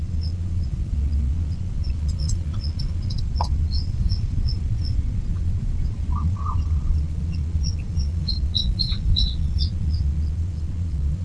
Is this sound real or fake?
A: fake